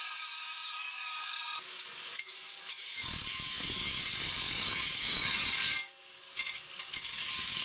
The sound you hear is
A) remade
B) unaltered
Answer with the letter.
A